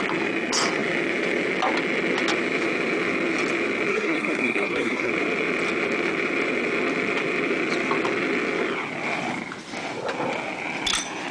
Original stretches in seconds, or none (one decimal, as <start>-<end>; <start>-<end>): 0.0-3.9; 5.1-11.3